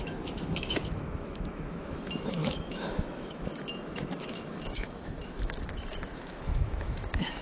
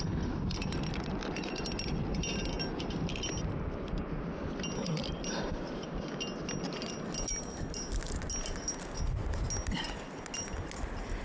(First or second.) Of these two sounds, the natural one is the second